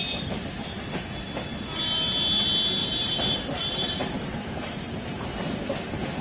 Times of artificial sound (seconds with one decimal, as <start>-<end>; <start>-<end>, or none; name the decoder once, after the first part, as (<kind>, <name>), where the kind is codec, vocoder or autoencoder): 2.8-5.2 (vocoder, BigVGAN v2)